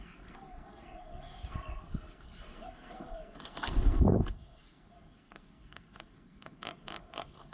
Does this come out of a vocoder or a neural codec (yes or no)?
yes